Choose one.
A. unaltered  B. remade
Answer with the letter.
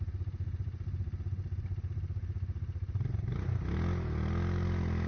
A